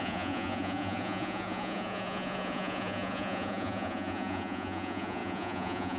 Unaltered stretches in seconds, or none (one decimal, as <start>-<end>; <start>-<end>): none